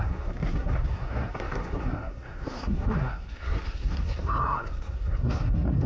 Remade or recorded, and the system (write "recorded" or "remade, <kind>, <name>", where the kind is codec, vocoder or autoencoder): remade, codec, SNAC